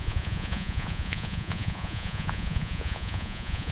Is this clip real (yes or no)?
no